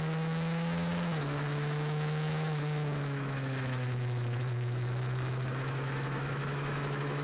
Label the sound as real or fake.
fake